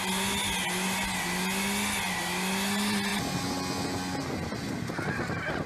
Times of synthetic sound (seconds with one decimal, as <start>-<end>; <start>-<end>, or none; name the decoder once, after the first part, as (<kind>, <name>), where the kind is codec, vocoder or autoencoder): none